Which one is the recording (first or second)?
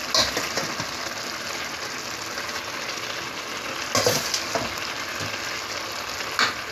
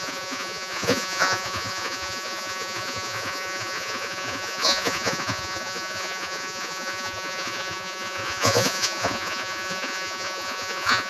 first